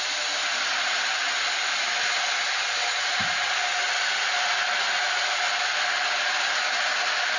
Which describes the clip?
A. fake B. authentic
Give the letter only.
B